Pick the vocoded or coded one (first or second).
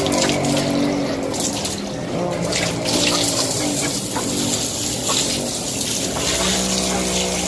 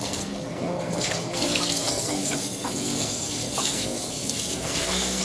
second